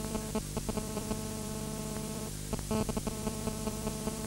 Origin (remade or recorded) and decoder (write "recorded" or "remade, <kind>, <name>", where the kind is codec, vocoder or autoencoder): remade, vocoder, BigVGAN v2